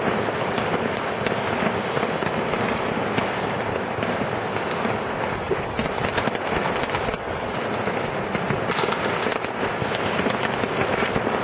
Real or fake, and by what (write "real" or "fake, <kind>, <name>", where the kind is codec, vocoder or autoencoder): real